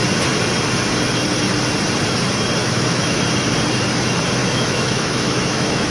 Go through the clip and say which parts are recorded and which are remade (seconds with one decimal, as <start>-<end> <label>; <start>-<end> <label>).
0.0-2.6 recorded; 2.6-3.2 remade; 3.2-4.4 recorded; 4.4-5.9 remade